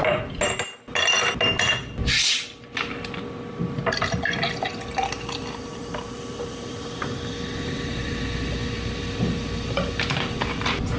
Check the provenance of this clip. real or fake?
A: real